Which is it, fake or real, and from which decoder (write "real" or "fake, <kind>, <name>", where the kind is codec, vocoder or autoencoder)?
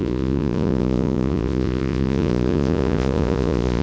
fake, vocoder, Vocos